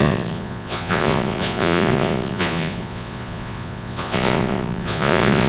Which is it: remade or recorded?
remade